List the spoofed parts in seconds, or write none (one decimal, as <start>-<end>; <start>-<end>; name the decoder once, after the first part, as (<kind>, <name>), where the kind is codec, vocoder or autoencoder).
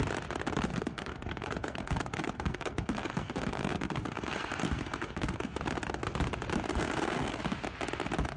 0.7-5.6 (codec, SNAC); 6.7-7.4